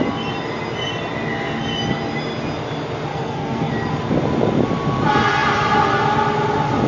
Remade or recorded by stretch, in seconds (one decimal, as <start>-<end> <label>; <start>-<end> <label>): 0.0-3.1 recorded; 3.1-3.7 remade; 3.7-6.9 recorded

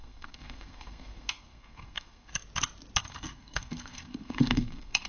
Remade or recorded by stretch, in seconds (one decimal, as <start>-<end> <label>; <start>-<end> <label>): 0.0-2.3 remade; 2.3-3.0 recorded; 3.0-5.1 remade

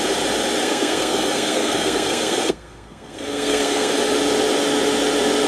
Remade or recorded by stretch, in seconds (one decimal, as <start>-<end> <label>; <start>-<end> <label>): 0.0-0.6 recorded; 0.6-3.9 remade; 3.9-5.5 recorded

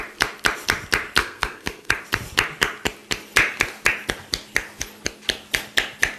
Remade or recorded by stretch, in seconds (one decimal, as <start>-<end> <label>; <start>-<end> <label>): 0.0-1.2 recorded; 1.2-1.9 remade; 1.9-6.2 recorded